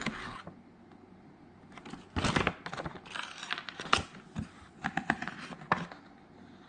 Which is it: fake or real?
real